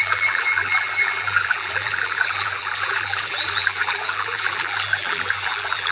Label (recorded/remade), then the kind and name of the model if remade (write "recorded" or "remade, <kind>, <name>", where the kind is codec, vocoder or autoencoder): remade, vocoder, BigVGAN v2